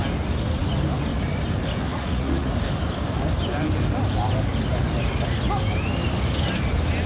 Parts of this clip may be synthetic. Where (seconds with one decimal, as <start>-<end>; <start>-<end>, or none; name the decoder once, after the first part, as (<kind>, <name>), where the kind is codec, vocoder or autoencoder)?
1.9-2.5 (vocoder, Vocos)